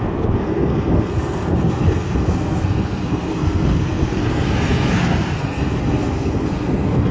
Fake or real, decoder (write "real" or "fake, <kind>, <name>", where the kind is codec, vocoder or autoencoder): fake, codec, SNAC